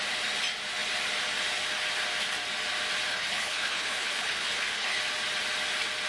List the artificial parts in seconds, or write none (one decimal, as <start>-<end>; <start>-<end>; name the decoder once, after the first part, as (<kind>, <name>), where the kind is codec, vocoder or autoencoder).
3.1-5.0 (codec, HILCodec)